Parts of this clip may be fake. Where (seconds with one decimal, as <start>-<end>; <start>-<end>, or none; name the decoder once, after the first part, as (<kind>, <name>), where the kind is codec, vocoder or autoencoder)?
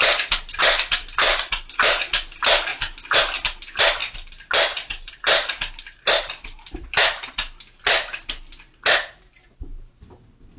none